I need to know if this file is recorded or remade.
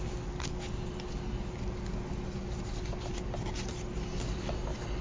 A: recorded